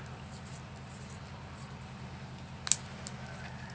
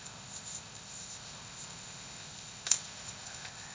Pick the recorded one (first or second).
first